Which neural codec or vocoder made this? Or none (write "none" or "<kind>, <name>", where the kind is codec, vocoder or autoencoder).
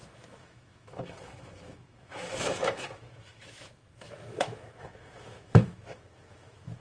autoencoder, DAC-VAE